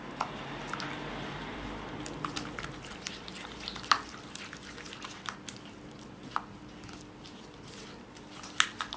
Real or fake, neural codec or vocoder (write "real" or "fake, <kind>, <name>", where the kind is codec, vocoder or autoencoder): real